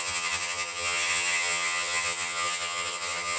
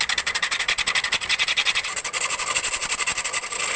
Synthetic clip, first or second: first